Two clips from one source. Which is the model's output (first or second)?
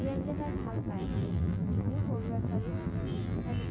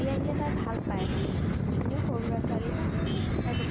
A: first